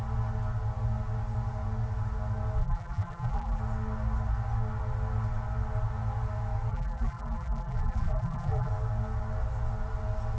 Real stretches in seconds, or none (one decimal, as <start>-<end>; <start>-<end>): 0.0-2.6; 3.6-6.7; 8.7-10.4